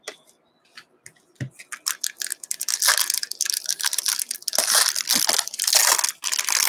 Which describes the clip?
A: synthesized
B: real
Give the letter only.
B